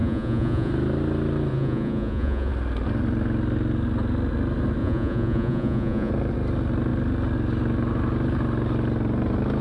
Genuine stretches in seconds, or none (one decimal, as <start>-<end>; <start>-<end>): 0.7-1.5; 2.5-4.8; 6.1-9.6